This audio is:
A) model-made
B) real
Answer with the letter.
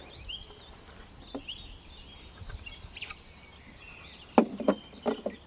B